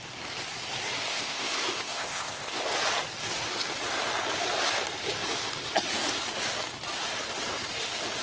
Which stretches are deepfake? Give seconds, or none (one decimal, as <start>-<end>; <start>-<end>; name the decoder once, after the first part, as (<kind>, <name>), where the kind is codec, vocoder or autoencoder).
1.1-2.7 (codec, ZipCodec)